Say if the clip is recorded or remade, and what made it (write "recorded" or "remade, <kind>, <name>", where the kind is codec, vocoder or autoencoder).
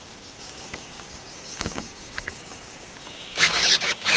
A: remade, codec, DAC